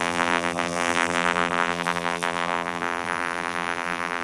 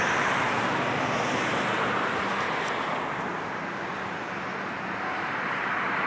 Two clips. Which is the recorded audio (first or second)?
second